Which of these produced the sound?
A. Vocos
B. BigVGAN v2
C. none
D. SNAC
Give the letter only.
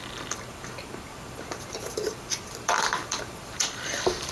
B